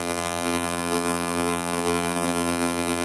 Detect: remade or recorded remade